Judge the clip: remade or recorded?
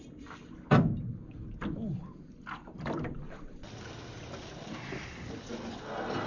recorded